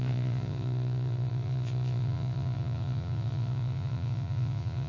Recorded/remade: remade